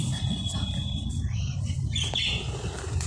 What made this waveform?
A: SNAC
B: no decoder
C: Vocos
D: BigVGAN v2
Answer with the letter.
D